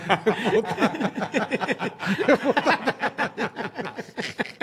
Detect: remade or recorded recorded